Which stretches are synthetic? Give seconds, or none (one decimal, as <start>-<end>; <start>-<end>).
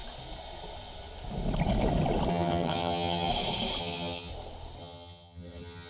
2.3-3.3; 3.8-4.3; 4.8-5.9